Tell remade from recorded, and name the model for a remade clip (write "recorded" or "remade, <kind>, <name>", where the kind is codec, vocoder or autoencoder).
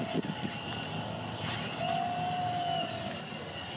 recorded